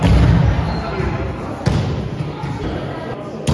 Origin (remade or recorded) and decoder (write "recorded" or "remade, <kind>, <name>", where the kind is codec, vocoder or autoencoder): recorded